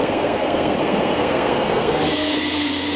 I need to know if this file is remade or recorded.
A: remade